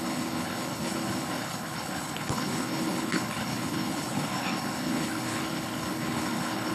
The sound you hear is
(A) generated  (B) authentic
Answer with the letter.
A